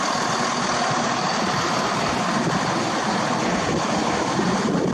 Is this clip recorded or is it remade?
recorded